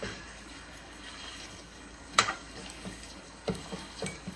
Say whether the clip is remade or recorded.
remade